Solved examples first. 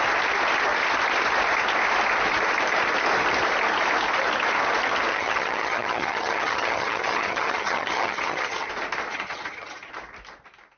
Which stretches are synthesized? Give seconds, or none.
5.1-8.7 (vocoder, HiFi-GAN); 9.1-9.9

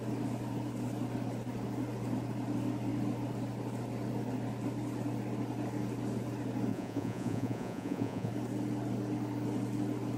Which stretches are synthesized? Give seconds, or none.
6.7-8.3 (vocoder, Vocos)